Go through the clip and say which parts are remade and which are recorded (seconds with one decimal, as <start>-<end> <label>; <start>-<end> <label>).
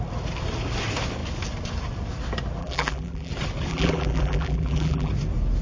0.0-2.6 recorded; 2.6-3.3 remade; 3.3-3.7 recorded; 3.7-5.1 remade; 5.1-5.6 recorded